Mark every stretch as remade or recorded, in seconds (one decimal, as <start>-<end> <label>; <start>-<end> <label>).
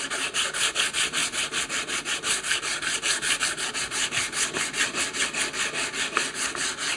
0.0-7.0 recorded